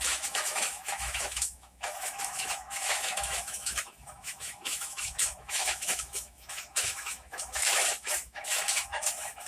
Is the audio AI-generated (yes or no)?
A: yes